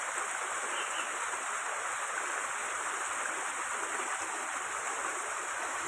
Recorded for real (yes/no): yes